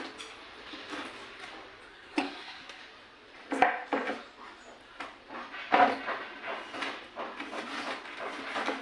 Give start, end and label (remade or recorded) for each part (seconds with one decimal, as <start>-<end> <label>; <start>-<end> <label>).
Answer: 0.0-1.9 recorded; 1.9-2.8 remade; 2.8-8.8 recorded